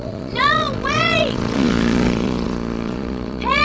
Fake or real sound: fake